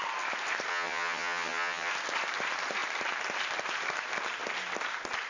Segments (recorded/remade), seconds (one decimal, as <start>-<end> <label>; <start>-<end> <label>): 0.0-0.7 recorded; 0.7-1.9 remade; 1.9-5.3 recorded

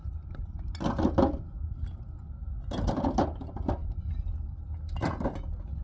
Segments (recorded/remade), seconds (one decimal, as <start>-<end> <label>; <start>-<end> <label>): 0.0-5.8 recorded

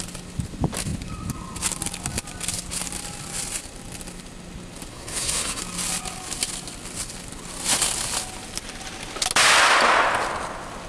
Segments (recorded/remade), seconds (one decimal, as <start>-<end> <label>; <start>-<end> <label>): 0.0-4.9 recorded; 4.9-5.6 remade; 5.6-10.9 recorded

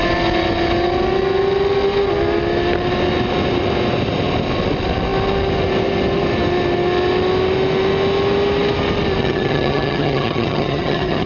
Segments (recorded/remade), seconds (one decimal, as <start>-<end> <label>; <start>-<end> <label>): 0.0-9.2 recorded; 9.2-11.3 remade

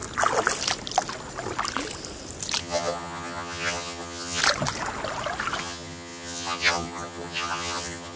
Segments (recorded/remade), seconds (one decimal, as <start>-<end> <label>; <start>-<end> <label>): 0.0-2.6 recorded; 2.6-4.4 remade; 4.4-5.6 recorded; 5.6-8.2 remade